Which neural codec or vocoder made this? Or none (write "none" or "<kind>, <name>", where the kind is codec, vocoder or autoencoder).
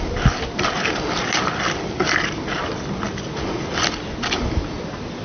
none